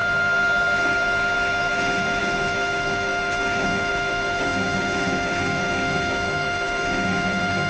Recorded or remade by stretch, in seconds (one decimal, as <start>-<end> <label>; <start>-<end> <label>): 0.0-7.7 remade